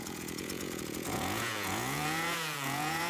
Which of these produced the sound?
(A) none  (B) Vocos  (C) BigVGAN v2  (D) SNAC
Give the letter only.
B